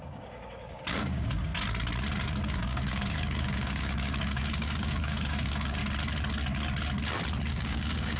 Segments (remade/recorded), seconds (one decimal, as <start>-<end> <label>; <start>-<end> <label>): 0.0-1.5 remade; 1.5-2.5 recorded; 2.5-5.8 remade; 5.8-7.5 recorded; 7.5-8.2 remade